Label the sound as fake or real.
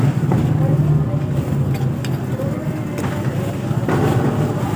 real